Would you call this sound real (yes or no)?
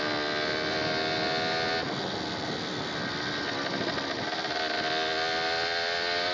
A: yes